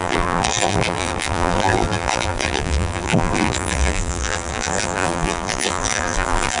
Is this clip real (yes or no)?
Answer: no